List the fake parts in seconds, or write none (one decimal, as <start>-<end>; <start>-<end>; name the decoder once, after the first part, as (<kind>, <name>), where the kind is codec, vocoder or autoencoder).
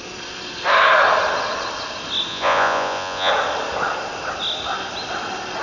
2.3-3.3 (vocoder, Vocos)